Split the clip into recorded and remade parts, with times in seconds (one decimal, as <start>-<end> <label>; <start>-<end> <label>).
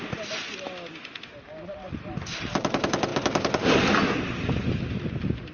0.0-5.5 recorded